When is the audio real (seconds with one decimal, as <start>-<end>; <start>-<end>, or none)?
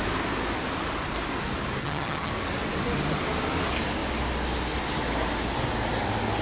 0.0-1.8; 2.3-6.4